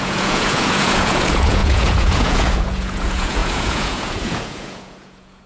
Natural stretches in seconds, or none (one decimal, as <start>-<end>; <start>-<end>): none